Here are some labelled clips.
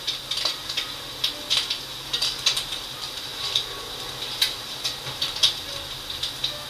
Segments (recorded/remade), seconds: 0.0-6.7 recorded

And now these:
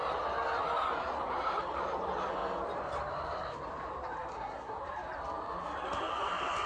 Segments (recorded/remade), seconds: 0.0-4.3 recorded; 4.3-4.8 remade; 4.8-6.7 recorded

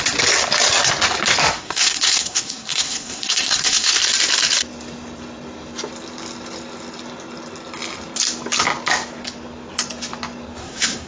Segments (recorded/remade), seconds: 0.0-1.6 recorded; 1.6-4.0 remade; 4.0-10.6 recorded; 10.6-11.1 remade

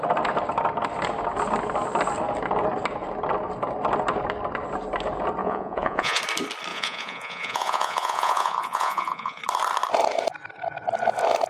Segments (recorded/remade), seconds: 0.0-5.4 recorded; 5.4-6.2 remade; 6.2-6.7 recorded; 6.7-9.4 remade; 9.4-11.5 recorded

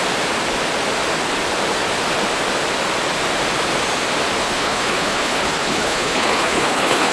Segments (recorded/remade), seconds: 0.0-4.4 recorded; 4.4-7.1 remade

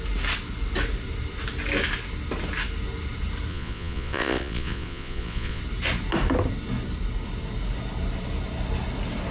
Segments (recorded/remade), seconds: 0.0-3.5 recorded; 3.5-5.6 remade; 5.6-9.3 recorded